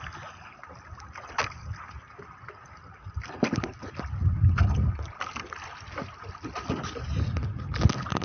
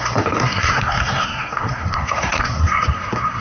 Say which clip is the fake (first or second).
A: second